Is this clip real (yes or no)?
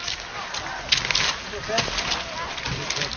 yes